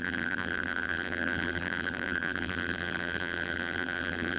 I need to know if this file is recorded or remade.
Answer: remade